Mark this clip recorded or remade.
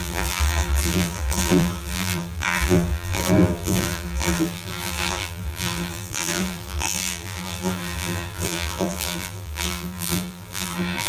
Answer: remade